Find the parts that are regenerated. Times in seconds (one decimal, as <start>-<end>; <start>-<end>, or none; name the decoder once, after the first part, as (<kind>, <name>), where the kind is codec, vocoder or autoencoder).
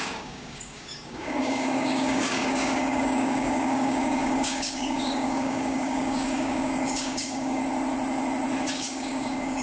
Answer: 0.0-7.6 (codec, DAC); 8.7-9.6